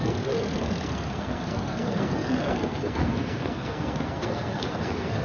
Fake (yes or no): yes